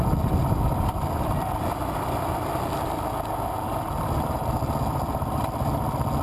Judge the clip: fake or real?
real